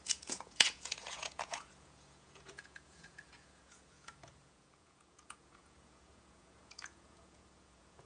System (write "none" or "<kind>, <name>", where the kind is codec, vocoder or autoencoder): vocoder, Vocos